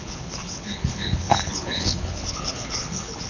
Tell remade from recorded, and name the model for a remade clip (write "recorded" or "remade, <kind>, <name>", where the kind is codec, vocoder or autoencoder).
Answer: remade, codec, HILCodec